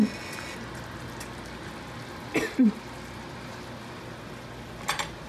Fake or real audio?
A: real